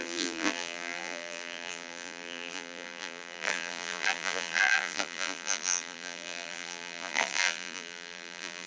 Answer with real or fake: fake